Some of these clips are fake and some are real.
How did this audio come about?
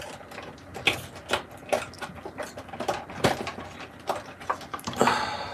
real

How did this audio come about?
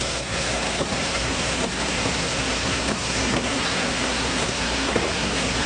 fake